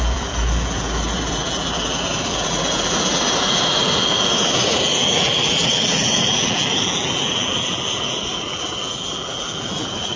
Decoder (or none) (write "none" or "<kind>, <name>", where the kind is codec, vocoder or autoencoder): vocoder, BigVGAN v2